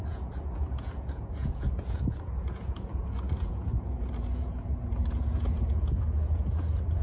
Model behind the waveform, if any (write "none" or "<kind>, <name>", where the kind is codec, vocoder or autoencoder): vocoder, Vocos